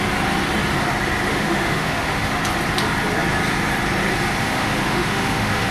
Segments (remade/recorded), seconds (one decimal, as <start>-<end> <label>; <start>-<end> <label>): 0.0-1.3 recorded; 1.3-2.3 remade; 2.3-4.4 recorded; 4.4-5.7 remade